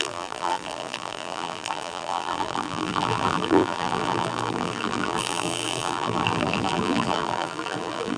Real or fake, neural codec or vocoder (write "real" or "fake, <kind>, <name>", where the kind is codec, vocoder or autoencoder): fake, vocoder, BigVGAN v2